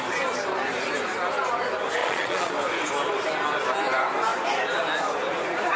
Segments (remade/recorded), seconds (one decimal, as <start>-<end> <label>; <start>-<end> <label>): 0.0-2.0 recorded; 2.0-2.5 remade; 2.5-5.8 recorded